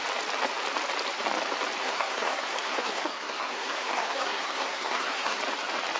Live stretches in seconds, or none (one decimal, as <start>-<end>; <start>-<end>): 0.0-1.8; 5.4-6.0